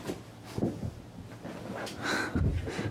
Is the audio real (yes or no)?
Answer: yes